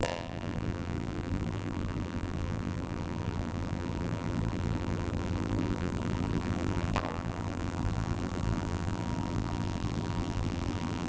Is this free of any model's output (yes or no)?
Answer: no